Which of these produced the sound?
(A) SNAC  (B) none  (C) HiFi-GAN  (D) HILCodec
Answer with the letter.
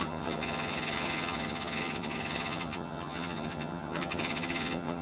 C